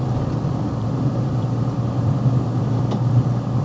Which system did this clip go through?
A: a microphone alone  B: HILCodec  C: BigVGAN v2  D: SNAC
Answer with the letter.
C